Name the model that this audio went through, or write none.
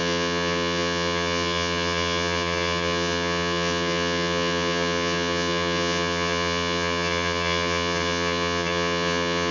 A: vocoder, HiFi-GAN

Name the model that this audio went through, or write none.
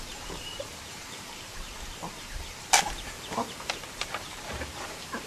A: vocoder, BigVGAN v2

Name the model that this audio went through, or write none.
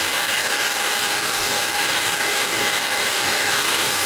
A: codec, DAC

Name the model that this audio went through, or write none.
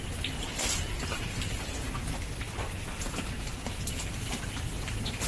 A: none